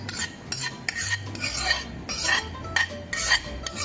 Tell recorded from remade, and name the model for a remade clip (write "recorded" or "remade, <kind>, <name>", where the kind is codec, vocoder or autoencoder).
recorded